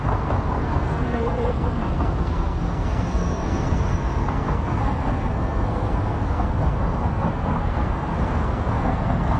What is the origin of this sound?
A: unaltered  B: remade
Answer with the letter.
B